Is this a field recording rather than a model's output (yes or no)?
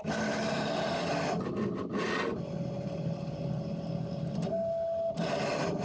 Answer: yes